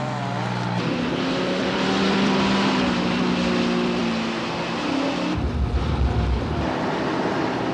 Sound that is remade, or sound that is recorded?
recorded